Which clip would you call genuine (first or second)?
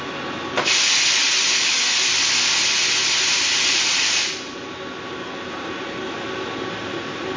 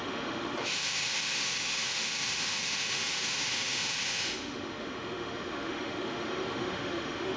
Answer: first